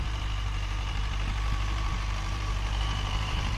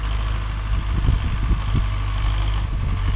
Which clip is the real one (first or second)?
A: second